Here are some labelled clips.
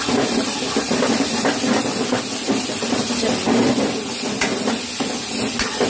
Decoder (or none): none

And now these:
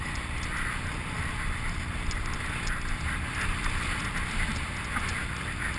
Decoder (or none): none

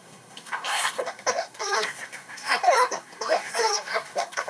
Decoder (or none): codec, SNAC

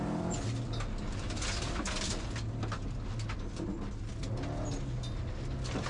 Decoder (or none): none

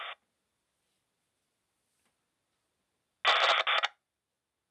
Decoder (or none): none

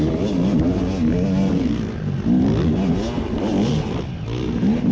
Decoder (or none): none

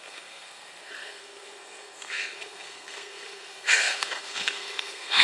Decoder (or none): codec, SNAC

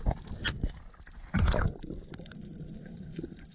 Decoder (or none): none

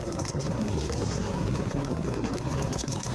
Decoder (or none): codec, SNAC